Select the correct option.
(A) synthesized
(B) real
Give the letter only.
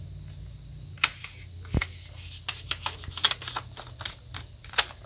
B